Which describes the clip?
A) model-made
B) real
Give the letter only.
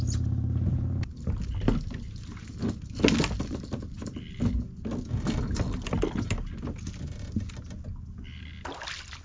B